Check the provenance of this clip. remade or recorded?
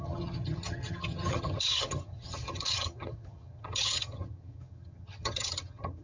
remade